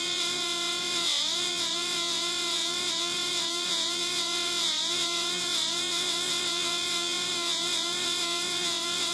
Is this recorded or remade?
remade